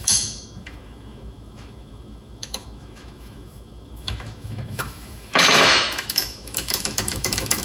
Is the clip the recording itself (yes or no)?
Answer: no